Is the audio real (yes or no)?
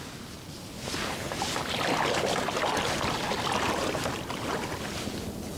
yes